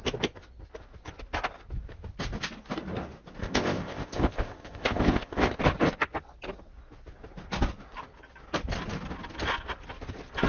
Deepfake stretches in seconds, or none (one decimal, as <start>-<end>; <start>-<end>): 3.4-5.6